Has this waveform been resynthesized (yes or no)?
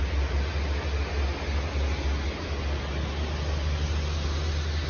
no